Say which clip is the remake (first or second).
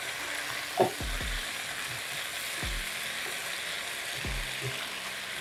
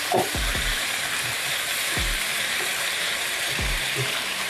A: second